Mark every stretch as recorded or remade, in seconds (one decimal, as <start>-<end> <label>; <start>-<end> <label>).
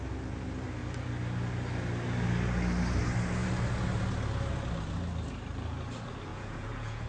0.0-6.3 recorded; 6.3-7.1 remade